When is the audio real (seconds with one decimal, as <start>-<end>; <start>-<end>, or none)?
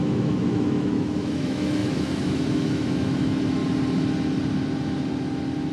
3.6-5.7